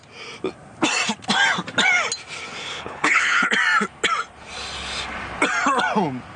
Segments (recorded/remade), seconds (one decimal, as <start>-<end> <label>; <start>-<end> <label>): 0.0-2.6 recorded; 2.6-3.5 remade; 3.5-6.4 recorded